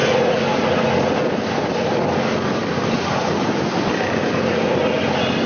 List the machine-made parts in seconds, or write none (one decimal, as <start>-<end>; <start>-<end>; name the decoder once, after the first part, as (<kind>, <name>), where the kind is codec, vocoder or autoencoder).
none